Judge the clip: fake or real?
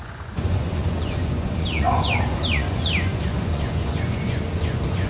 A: fake